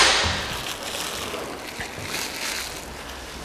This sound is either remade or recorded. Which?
recorded